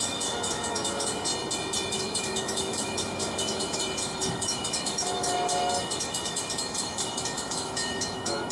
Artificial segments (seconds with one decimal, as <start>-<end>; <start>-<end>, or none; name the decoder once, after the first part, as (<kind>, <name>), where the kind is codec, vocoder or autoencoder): 0.0-1.3 (autoencoder, DAC-VAE); 1.9-8.5